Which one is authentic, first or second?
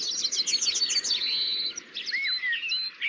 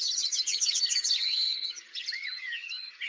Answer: first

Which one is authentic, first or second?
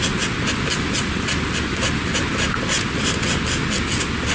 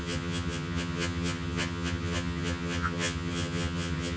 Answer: first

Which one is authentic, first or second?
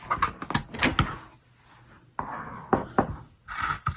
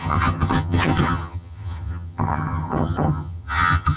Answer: first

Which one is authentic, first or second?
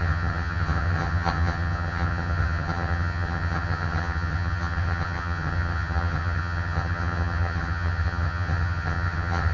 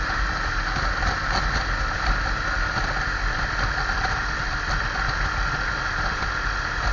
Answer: second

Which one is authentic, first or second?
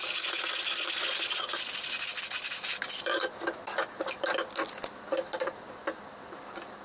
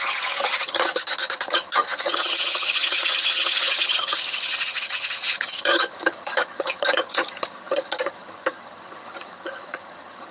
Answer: first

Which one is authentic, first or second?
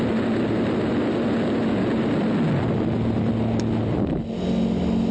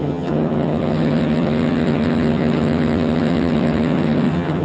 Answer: first